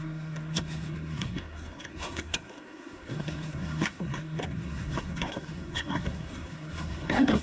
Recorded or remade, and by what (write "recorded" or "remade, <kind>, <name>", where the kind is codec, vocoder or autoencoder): remade, codec, SNAC